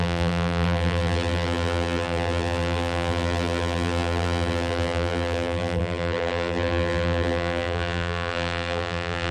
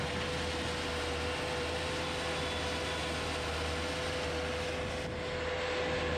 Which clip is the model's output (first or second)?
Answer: first